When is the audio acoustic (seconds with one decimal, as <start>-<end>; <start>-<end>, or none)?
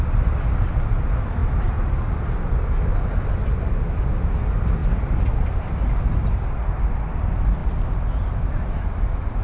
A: 0.0-1.4; 2.1-7.6; 8.8-9.4